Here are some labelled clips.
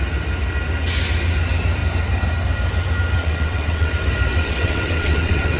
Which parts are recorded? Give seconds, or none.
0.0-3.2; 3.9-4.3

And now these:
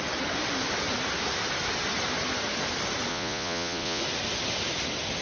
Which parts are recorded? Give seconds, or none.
0.0-3.1; 4.0-5.2

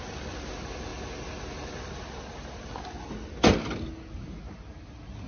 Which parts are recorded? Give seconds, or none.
0.0-5.3

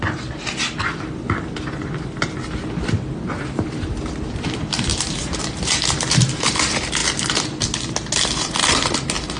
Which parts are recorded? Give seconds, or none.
0.0-4.9; 5.4-9.4

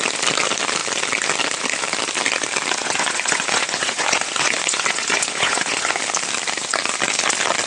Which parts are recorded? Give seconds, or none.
0.0-2.8; 6.0-7.7